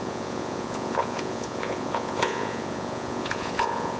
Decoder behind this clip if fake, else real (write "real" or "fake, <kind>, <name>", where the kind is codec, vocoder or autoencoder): fake, vocoder, Vocos